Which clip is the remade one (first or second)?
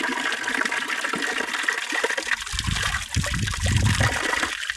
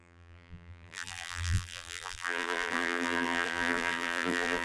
second